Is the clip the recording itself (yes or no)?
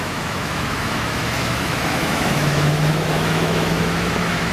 no